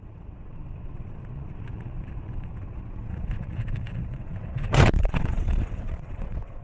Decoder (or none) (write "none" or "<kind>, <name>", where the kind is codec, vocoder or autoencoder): vocoder, WaveNeXt